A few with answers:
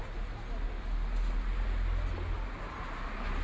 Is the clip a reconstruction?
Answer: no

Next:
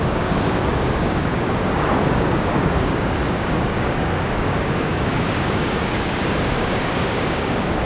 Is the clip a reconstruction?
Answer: yes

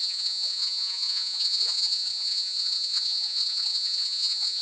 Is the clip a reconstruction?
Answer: yes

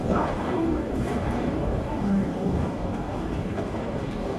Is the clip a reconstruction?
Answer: yes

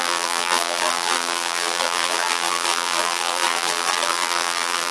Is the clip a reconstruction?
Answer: yes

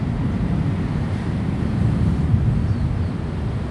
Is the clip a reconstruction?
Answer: no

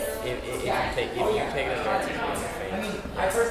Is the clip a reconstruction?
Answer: no